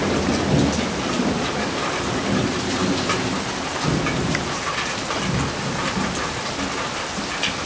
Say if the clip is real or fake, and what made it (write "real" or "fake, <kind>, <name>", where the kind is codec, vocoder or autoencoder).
real